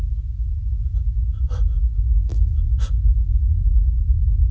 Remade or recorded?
recorded